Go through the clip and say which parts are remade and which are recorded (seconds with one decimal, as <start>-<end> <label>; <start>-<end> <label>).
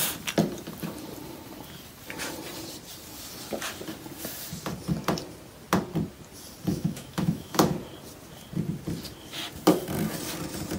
0.0-6.7 recorded; 6.7-7.7 remade; 7.7-10.8 recorded